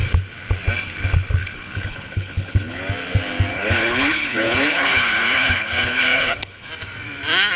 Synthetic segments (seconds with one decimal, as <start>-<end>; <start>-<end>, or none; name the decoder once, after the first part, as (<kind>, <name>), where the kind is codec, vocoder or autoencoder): 1.4-2.8 (codec, HILCodec); 3.5-6.7